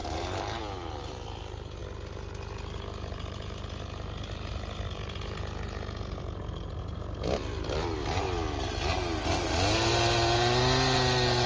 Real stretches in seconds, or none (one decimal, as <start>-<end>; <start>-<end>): 0.0-11.5